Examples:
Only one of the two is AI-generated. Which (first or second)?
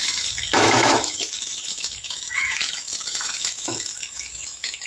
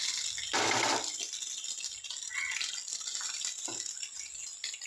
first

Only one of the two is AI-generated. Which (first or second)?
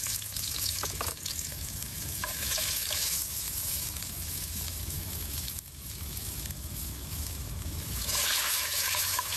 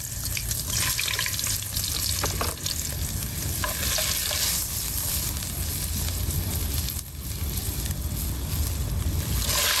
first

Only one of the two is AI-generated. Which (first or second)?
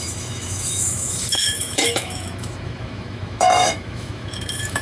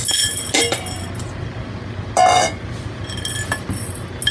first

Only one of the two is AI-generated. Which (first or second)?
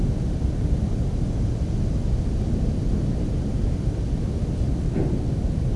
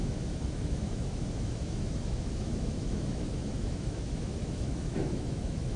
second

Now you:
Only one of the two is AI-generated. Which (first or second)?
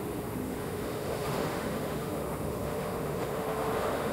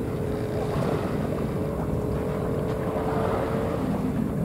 first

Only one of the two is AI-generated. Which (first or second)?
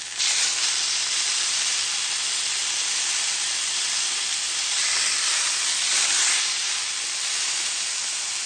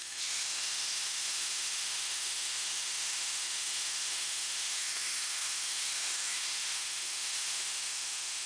second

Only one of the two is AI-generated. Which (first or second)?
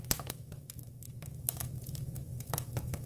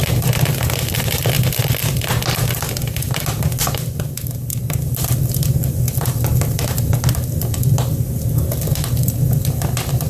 first